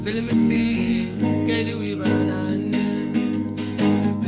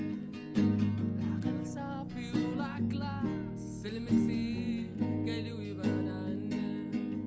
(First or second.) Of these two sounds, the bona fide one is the second